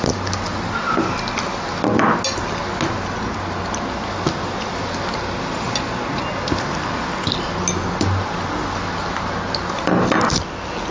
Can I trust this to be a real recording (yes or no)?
yes